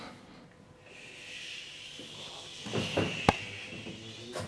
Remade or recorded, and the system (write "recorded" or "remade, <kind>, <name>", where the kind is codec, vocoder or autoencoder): recorded